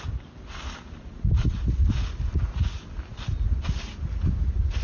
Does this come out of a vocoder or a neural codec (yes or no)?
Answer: no